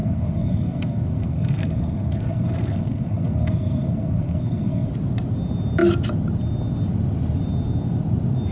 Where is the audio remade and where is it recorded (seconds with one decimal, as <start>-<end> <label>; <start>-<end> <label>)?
0.0-4.9 remade; 4.9-8.5 recorded